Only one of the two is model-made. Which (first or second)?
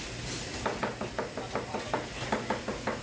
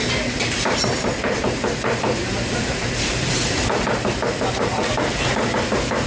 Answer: second